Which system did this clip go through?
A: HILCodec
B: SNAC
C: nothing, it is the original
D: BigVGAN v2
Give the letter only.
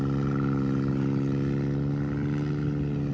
C